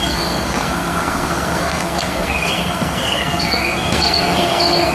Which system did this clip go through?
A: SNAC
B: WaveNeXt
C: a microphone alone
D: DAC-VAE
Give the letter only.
A